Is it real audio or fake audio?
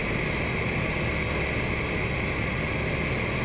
real